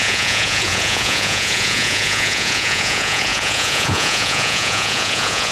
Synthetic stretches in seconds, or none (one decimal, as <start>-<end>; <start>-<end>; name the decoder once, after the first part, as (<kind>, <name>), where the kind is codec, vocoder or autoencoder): 0.0-5.5 (vocoder, Vocos)